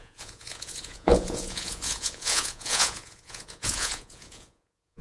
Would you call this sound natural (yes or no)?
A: no